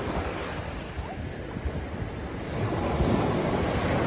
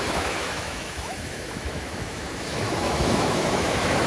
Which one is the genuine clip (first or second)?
first